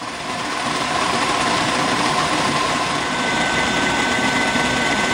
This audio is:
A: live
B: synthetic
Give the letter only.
B